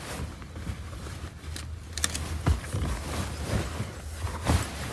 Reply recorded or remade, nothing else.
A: recorded